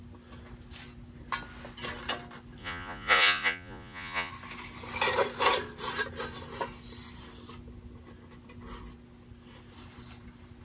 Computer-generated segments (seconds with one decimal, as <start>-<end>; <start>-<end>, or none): 2.6-4.3